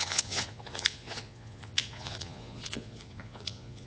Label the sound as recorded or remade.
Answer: remade